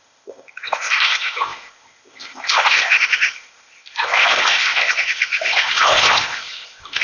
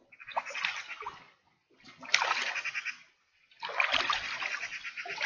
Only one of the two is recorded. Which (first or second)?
second